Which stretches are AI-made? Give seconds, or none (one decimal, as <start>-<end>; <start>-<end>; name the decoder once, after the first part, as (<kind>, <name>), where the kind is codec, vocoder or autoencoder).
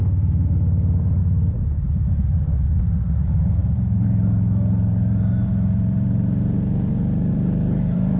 0.0-8.2 (vocoder, BigVGAN v2)